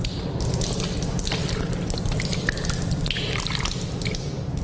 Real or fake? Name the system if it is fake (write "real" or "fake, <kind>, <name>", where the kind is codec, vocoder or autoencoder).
real